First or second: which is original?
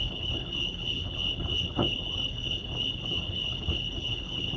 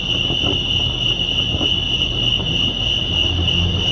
second